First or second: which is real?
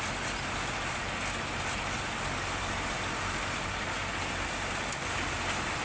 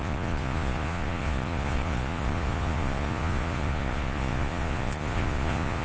first